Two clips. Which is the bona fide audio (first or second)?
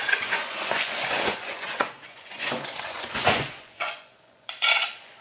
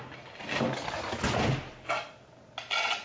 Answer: second